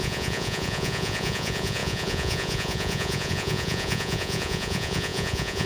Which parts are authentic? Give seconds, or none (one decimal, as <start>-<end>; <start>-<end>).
none